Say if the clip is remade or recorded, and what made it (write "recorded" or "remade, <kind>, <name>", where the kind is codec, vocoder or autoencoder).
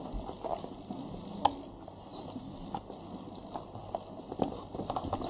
recorded